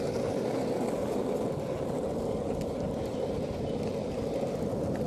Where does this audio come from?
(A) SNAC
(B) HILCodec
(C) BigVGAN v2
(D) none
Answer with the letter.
D